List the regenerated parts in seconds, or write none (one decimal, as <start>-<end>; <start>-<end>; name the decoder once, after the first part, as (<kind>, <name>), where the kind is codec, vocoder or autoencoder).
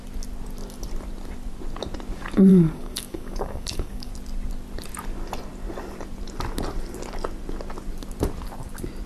2.5-4.1 (codec, DAC)